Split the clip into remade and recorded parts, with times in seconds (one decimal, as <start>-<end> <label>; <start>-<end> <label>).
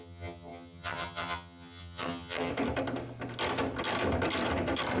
0.0-2.5 remade; 2.5-5.0 recorded